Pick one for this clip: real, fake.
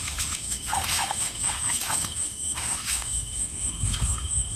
fake